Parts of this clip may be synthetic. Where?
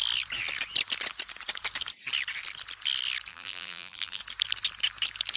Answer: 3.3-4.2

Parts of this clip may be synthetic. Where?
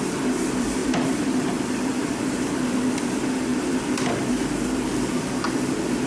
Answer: 0.0-6.1